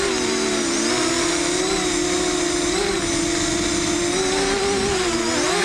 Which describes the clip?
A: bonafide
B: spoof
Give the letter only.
A